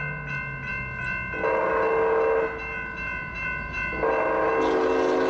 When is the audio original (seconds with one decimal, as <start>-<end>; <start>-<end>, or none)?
0.0-5.3